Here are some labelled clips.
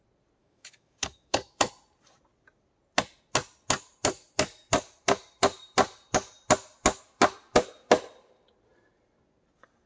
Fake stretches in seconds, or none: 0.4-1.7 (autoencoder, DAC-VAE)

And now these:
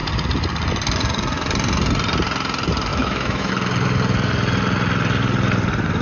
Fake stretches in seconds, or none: 2.9-3.5 (autoencoder, DAC-VAE)

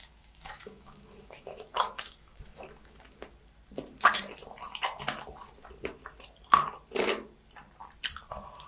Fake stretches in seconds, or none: 0.0-3.0 (autoencoder, DAC-VAE)

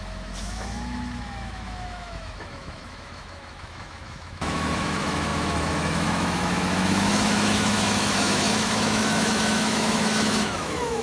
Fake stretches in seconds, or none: 0.0-11.0 (autoencoder, DAC-VAE)

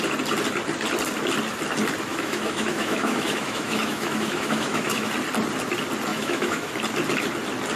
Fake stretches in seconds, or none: 2.1-5.1 (autoencoder, DAC-VAE); 6.1-6.7